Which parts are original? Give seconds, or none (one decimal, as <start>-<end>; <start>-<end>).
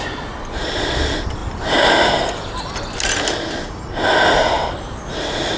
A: 0.0-5.6